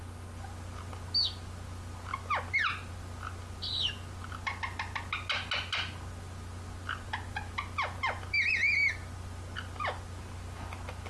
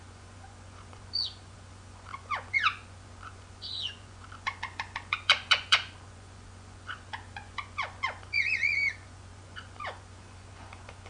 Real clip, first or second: first